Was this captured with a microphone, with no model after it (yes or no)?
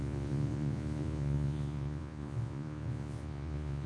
no